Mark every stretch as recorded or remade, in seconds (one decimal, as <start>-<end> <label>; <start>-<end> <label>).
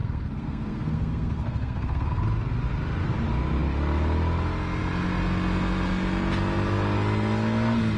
0.0-2.2 remade; 2.2-8.0 recorded